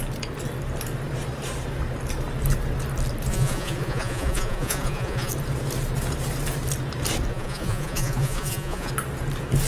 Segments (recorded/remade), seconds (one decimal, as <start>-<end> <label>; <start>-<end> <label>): 0.0-3.3 recorded; 3.3-5.3 remade; 5.3-7.3 recorded; 7.3-8.9 remade; 8.9-9.7 recorded